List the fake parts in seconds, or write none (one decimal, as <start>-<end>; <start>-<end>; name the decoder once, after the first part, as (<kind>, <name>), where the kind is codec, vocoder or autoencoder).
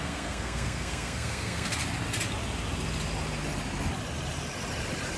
0.0-1.8 (codec, SNAC)